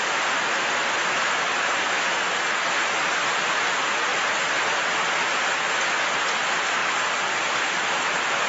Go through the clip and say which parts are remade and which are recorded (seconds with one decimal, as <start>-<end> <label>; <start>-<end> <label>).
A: 0.0-6.8 recorded; 6.8-7.5 remade; 7.5-8.5 recorded